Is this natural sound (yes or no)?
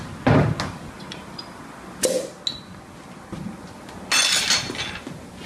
yes